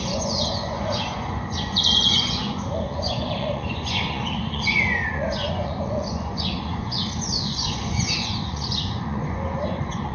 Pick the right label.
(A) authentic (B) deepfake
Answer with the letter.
B